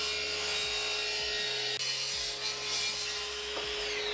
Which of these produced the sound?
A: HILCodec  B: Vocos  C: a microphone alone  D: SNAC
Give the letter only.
C